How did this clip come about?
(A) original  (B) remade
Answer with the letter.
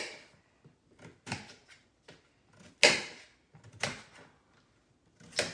A